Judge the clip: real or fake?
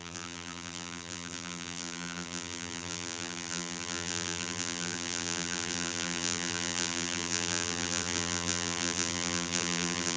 fake